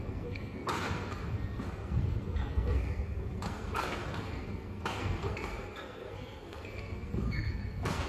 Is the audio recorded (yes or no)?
no